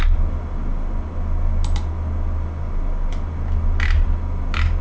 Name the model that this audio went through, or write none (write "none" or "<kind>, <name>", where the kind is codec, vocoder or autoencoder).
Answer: none